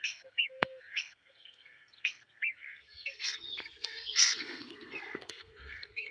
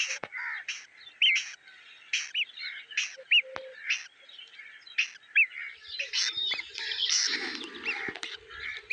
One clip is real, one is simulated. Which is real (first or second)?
second